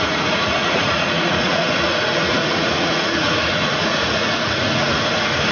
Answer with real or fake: fake